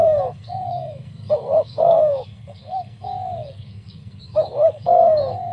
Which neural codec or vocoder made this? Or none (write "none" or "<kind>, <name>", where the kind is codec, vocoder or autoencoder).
codec, SNAC